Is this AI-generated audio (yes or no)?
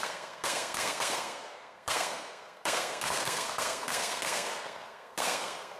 yes